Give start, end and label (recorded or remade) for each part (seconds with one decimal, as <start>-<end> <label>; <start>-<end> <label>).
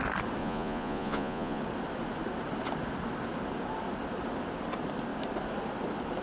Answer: 0.0-0.4 recorded; 0.4-1.6 remade; 1.6-6.2 recorded